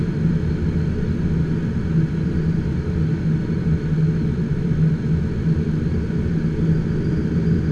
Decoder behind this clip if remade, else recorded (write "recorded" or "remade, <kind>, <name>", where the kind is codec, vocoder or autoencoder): recorded